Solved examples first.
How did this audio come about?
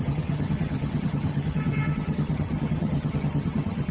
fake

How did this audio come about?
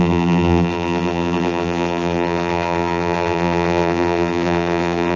fake